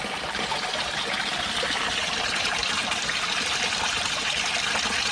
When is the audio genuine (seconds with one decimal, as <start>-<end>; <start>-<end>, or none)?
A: 0.0-1.3; 4.2-5.1